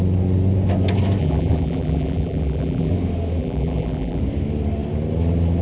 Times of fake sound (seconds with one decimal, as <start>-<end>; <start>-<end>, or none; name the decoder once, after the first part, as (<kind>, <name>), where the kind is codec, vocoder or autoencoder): 1.2-2.9 (vocoder, BigVGAN v2); 3.4-4.2

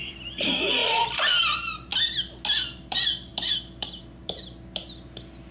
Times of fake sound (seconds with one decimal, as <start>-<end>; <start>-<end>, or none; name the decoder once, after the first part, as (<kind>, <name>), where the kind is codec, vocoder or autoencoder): 0.0-1.9 (vocoder, BigVGAN v2); 2.8-5.5

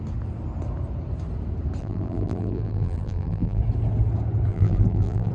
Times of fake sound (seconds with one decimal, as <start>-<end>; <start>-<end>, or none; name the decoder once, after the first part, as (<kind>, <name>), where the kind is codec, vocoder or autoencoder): 1.8-3.6 (vocoder, BigVGAN v2); 4.5-5.3

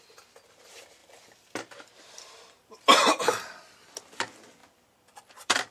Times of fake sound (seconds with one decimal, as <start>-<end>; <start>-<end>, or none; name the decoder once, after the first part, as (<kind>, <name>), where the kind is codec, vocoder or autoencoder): 1.0-4.0 (vocoder, BigVGAN v2); 4.6-5.7

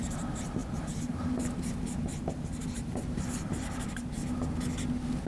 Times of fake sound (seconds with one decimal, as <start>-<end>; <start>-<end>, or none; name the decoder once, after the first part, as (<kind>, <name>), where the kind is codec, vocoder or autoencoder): 0.0-4.2 (vocoder, BigVGAN v2)

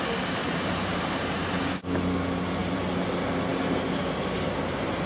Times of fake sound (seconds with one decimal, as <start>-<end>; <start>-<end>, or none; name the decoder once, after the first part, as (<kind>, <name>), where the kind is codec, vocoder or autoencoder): 0.4-1.6 (vocoder, BigVGAN v2); 2.6-3.1

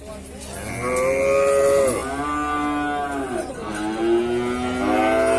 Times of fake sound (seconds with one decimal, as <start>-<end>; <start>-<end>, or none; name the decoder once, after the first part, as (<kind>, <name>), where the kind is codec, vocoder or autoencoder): none